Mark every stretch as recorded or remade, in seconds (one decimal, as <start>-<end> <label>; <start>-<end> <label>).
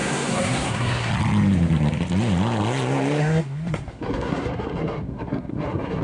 0.0-1.1 remade; 1.1-3.2 recorded; 3.2-6.0 remade